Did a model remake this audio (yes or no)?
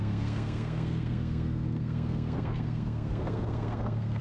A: yes